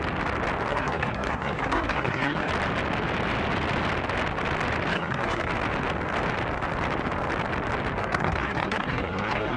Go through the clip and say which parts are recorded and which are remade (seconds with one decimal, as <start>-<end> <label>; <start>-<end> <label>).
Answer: 0.0-0.7 recorded; 0.7-2.5 remade; 2.5-4.9 recorded; 4.9-5.5 remade; 5.5-8.0 recorded; 8.0-9.6 remade